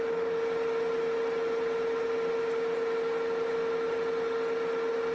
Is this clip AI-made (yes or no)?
no